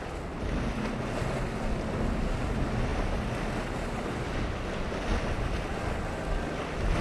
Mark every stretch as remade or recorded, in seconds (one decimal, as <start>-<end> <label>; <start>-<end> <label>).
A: 0.0-7.0 recorded